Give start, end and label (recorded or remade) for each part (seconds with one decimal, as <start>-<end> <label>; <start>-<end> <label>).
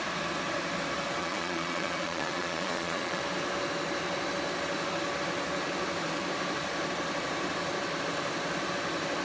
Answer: 0.0-1.2 recorded; 1.2-3.2 remade; 3.2-9.2 recorded